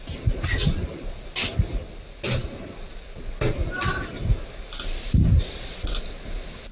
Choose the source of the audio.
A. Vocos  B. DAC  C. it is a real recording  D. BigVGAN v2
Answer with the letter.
C